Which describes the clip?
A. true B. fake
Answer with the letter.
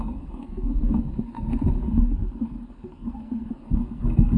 B